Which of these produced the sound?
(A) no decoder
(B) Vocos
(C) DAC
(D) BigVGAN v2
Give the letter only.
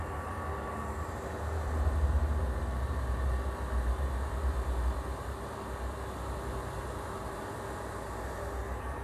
D